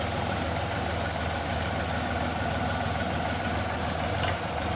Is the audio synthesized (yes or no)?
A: no